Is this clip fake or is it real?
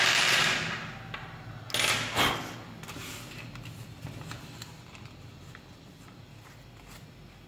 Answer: real